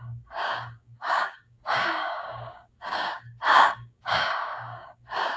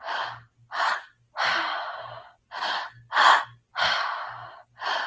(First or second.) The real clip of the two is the second